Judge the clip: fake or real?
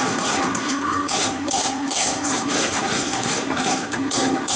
fake